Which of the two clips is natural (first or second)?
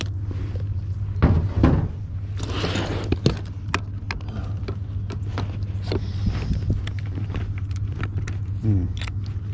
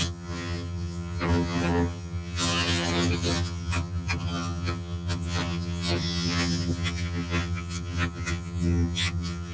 first